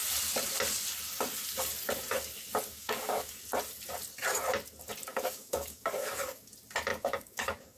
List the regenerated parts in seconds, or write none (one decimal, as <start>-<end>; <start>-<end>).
2.7-3.4; 5.1-6.5; 6.9-7.8